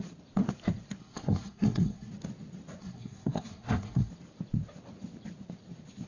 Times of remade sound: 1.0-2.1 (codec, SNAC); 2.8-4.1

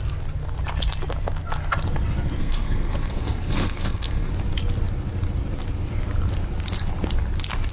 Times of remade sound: 2.4-4.3 (codec, SNAC)

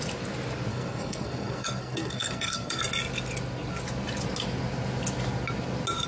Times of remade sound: 0.7-2.8 (codec, SNAC)

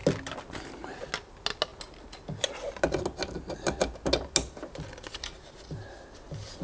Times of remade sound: none

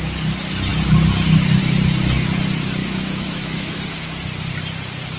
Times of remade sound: 2.8-3.8 (autoencoder, DAC-VAE)

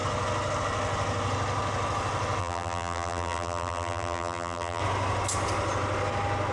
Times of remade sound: 2.4-4.8 (vocoder, BigVGAN v2)